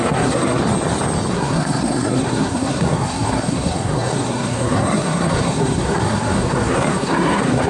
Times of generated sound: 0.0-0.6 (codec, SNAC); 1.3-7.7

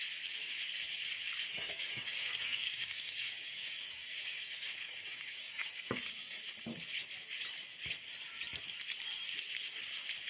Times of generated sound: 1.5-6.4 (codec, DAC)

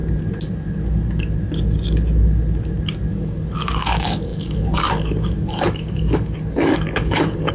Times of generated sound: 3.1-7.5 (codec, DAC)

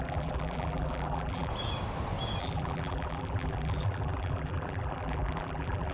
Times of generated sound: 0.0-1.5 (vocoder, BigVGAN v2); 2.4-5.9